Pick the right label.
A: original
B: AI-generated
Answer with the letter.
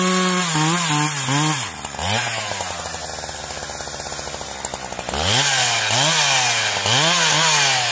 A